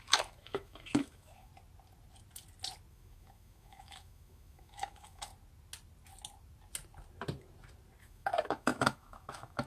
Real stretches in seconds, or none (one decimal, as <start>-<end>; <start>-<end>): 1.5-2.9; 5.3-8.0